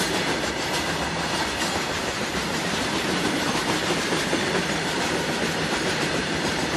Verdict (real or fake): fake